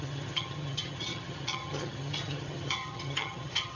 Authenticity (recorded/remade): remade